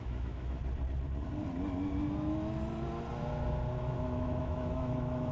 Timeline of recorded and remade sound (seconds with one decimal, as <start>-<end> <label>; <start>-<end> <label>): 0.0-0.6 remade; 0.6-3.8 recorded; 3.8-5.3 remade